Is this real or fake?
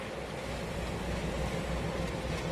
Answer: real